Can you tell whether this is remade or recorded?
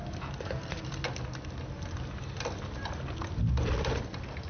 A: recorded